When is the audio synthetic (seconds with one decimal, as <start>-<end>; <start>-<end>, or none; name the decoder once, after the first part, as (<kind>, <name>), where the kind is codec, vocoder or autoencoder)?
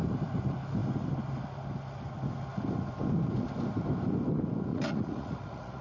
4.7-5.8 (vocoder, Vocos)